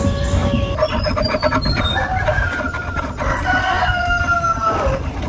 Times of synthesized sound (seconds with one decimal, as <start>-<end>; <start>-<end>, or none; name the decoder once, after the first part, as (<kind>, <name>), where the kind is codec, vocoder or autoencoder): 3.6-4.2 (codec, SNAC)